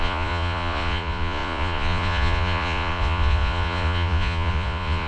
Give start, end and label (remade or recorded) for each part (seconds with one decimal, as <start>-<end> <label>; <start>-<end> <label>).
0.0-5.1 remade